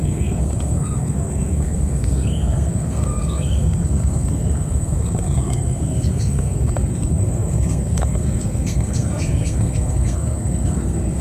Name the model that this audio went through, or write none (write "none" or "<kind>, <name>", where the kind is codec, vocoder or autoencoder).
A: codec, SNAC